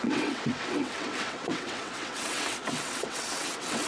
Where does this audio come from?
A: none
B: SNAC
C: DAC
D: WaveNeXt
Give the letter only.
D